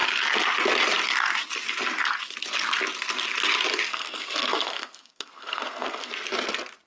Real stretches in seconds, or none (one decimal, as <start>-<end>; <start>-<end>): 0.0-3.9; 6.1-6.9